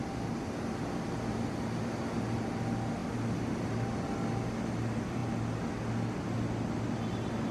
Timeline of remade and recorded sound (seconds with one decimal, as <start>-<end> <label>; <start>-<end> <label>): 0.0-7.5 recorded